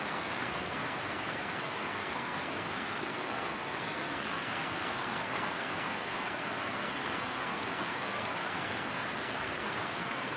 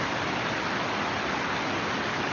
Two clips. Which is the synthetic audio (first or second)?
first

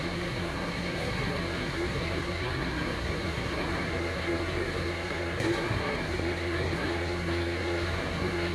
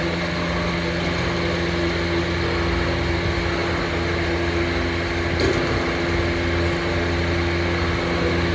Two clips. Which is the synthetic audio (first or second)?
first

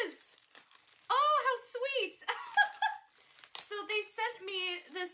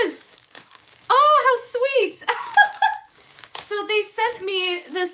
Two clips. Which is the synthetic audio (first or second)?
second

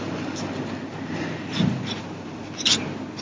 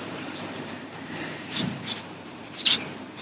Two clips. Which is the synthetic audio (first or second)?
second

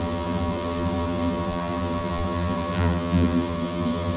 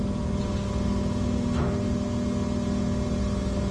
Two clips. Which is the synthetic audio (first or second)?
first